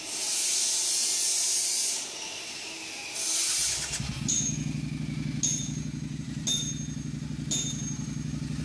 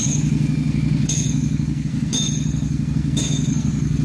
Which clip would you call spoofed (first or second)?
second